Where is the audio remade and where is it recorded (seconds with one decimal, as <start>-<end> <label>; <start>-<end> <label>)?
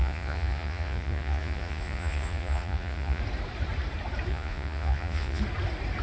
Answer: 0.0-3.2 remade; 3.2-4.3 recorded; 4.3-5.4 remade; 5.4-6.0 recorded